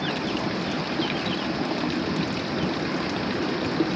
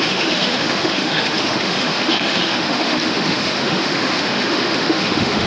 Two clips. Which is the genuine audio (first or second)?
first